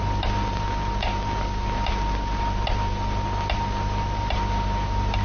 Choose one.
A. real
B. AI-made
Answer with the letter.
A